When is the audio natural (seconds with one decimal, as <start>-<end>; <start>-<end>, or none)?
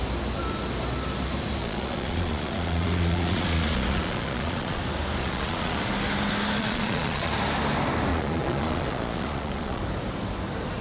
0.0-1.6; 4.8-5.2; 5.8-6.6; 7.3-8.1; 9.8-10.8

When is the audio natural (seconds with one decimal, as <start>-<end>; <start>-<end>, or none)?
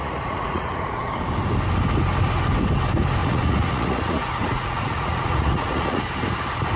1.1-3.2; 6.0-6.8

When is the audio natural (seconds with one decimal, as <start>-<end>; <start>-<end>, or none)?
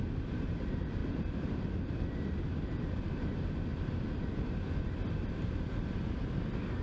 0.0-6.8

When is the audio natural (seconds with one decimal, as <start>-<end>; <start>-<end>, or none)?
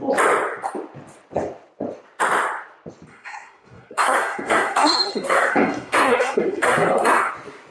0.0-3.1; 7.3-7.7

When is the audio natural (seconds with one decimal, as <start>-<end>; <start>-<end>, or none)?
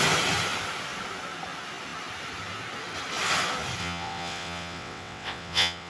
0.0-3.8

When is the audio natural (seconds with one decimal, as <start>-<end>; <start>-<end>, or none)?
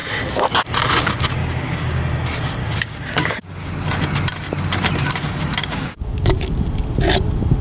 0.0-1.4; 2.0-2.6; 3.7-5.6; 6.5-7.6